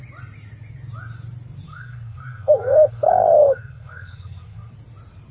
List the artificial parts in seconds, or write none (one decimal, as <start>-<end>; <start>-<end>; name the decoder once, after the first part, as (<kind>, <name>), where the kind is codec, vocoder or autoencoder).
1.7-4.7 (codec, SNAC)